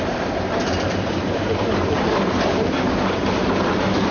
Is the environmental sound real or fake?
fake